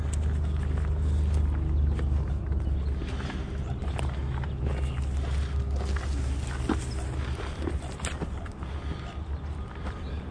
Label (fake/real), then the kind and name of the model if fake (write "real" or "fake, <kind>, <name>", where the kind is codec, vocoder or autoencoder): real